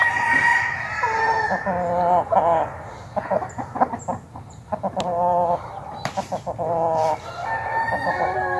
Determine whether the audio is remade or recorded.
recorded